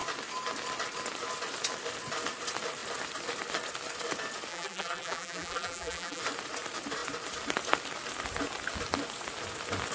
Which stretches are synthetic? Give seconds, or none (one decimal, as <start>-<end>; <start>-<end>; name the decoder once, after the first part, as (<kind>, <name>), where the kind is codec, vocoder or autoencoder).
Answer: 4.5-6.2 (vocoder, BigVGAN v2)